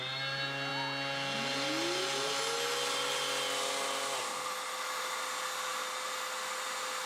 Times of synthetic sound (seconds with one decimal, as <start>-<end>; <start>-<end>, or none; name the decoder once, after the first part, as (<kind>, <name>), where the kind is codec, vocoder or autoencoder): none